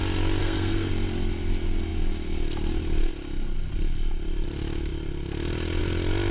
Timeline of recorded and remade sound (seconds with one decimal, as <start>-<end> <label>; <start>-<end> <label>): 0.0-0.4 recorded; 0.4-0.9 remade; 0.9-6.3 recorded